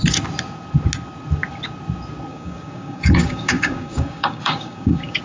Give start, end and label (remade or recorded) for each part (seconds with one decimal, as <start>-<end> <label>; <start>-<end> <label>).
0.0-2.3 recorded; 2.3-5.2 remade